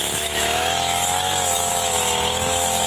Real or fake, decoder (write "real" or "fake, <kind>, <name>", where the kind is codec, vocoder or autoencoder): fake, autoencoder, DAC-VAE